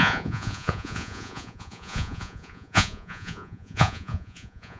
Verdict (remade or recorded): remade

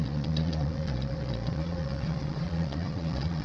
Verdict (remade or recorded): remade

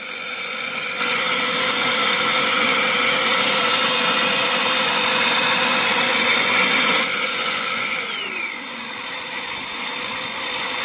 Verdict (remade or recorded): remade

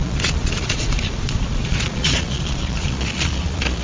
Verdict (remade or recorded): remade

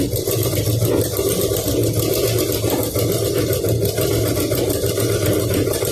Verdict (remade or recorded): recorded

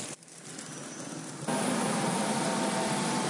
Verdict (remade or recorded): recorded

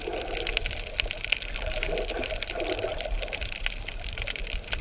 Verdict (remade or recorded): recorded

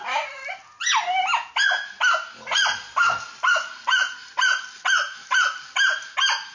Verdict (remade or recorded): recorded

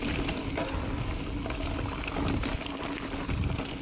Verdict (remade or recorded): recorded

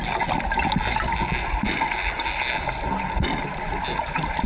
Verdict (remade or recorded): recorded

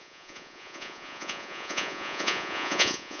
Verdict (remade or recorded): remade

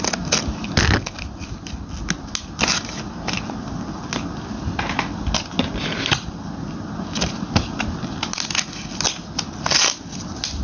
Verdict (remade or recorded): recorded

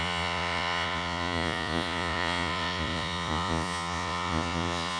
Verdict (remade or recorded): remade